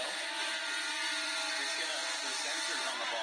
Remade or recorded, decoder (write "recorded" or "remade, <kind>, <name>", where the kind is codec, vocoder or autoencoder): remade, vocoder, BigVGAN v2